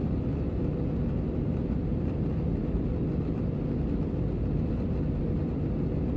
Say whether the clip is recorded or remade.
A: recorded